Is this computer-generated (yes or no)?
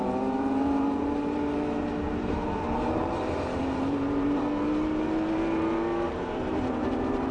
yes